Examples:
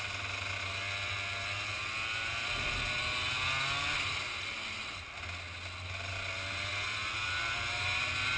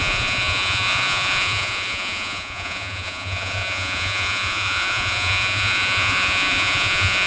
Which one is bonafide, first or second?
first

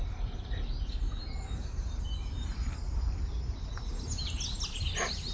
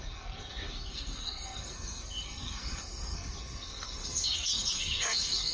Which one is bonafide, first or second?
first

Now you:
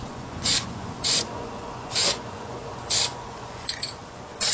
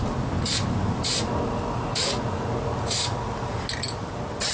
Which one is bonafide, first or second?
second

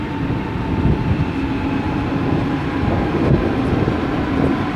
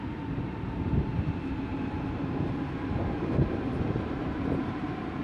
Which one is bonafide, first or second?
first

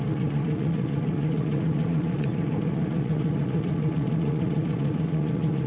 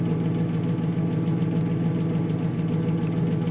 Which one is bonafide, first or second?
second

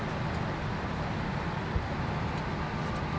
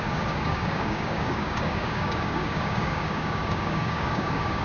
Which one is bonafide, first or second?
first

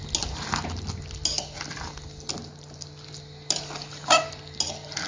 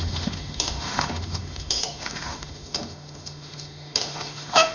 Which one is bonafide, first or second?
first